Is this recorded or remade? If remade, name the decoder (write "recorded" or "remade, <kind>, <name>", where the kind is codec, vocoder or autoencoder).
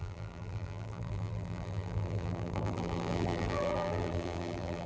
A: remade, vocoder, BigVGAN v2